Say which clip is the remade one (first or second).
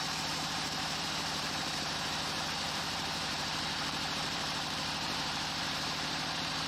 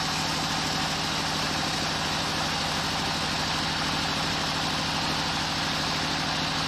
first